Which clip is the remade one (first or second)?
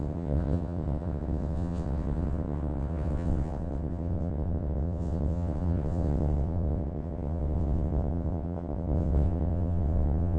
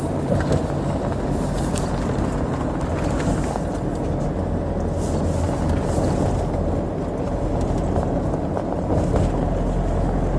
first